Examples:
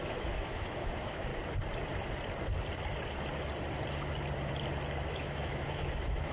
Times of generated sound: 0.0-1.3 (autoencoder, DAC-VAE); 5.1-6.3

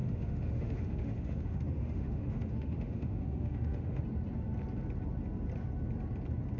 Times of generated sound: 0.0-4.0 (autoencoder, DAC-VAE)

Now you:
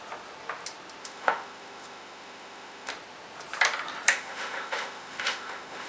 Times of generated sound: 1.0-2.9 (autoencoder, DAC-VAE); 4.1-5.9